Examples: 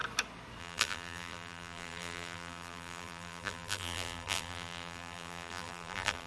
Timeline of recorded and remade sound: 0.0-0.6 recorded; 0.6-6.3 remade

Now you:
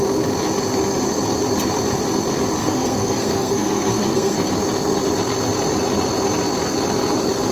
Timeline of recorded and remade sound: 0.0-2.6 recorded; 2.6-4.5 remade; 4.5-7.5 recorded